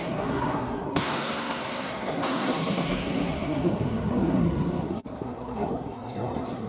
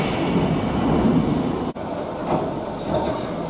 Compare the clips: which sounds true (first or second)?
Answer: second